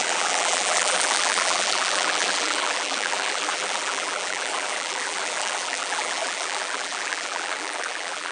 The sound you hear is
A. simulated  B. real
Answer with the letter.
A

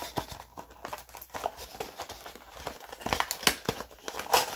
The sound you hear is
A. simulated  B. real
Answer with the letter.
B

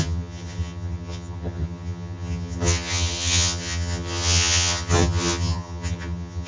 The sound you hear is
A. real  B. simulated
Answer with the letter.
B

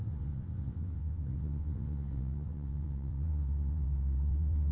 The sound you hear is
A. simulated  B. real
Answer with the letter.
A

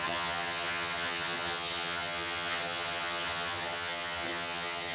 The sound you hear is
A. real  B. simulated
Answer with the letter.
B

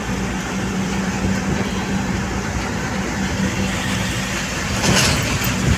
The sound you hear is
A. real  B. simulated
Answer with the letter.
B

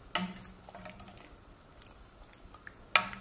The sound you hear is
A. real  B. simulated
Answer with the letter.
A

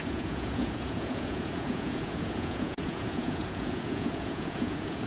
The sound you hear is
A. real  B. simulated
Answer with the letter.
B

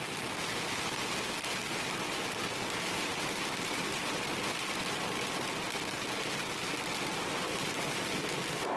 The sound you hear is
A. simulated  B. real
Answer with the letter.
B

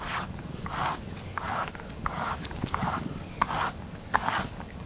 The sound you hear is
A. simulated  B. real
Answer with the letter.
A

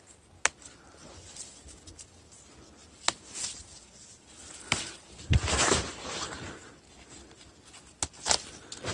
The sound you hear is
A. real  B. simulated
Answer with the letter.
A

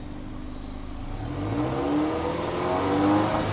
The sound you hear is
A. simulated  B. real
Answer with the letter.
B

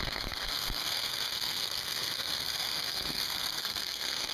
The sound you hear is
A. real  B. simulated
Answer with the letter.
B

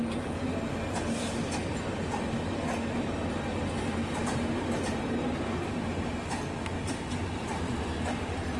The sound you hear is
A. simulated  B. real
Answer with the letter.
B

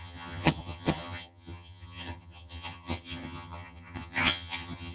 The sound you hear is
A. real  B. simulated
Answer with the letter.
B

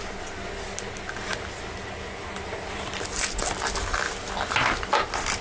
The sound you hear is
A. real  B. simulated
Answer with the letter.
A